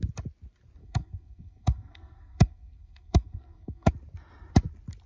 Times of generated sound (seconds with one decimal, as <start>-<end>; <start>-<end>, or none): 0.8-3.9